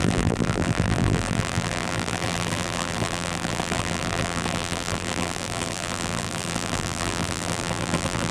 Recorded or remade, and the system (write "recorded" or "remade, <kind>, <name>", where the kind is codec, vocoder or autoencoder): remade, vocoder, BigVGAN v2